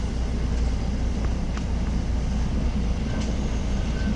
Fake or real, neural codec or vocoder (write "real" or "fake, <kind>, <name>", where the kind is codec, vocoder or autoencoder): real